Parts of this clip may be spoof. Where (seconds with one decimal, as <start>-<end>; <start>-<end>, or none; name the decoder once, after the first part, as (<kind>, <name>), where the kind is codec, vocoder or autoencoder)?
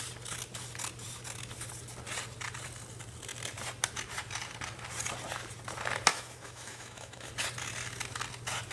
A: 6.1-7.3 (autoencoder, DAC-VAE)